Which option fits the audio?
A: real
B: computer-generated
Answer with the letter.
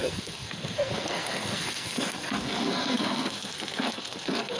B